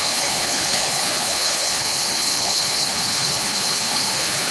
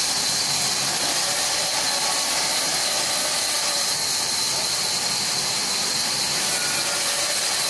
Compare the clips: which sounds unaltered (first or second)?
second